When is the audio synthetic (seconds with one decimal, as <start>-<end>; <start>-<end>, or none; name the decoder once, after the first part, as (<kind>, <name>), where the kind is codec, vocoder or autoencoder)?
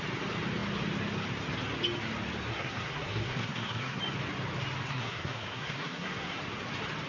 2.5-4.0 (codec, SNAC); 4.9-6.4